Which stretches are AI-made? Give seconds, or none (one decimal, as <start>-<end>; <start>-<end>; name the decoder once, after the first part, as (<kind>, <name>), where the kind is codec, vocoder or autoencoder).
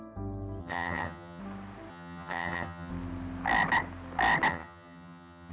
0.6-1.4 (vocoder, HiFi-GAN); 1.9-2.9; 4.5-5.5